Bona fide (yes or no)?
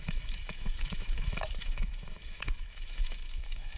no